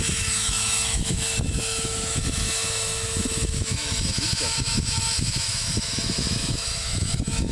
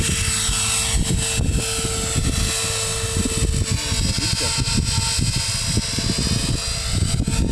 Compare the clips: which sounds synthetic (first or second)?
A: first